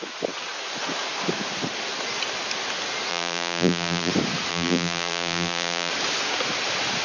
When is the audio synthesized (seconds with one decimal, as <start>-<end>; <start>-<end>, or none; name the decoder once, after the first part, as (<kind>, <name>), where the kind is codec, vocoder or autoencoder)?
3.1-4.1 (vocoder, BigVGAN v2); 4.5-5.9